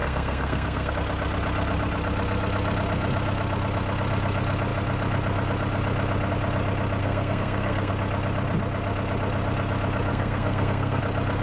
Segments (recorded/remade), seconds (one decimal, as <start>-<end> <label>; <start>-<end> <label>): 0.0-0.9 remade; 0.9-7.0 recorded; 7.0-7.9 remade; 7.9-10.1 recorded; 10.1-11.0 remade; 11.0-11.4 recorded